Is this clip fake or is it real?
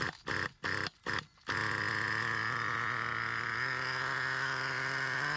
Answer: real